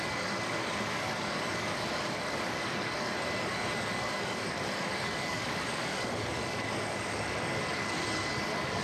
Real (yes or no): no